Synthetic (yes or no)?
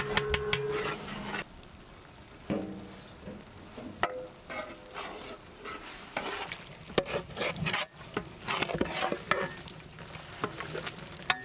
no